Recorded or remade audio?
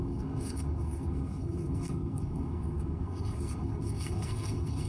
remade